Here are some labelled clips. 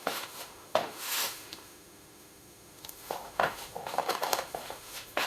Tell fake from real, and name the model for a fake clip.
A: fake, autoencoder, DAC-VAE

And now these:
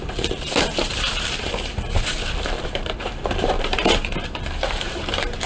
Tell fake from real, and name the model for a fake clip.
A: fake, vocoder, BigVGAN v2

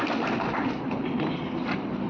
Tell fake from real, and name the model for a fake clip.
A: real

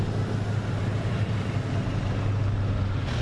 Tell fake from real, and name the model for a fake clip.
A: real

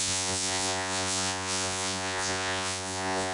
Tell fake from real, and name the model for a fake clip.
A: fake, vocoder, Vocos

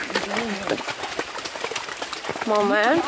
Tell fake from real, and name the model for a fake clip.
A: real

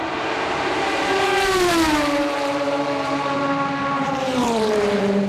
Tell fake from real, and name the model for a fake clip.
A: fake, vocoder, BigVGAN v2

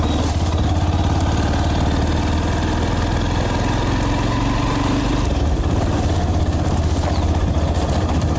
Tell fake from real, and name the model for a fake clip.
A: real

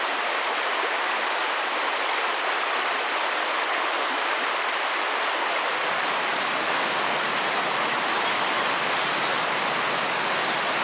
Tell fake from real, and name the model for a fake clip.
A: real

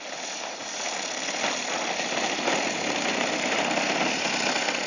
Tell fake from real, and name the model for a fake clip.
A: real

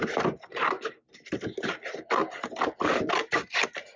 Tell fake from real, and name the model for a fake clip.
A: real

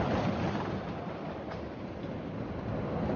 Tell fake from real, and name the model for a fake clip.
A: real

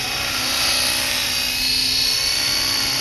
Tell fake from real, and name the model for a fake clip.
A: real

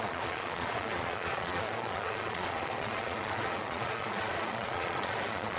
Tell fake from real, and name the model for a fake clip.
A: fake, vocoder, Vocos